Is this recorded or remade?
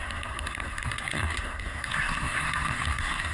remade